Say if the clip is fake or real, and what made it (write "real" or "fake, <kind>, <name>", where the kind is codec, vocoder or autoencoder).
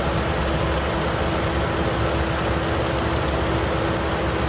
real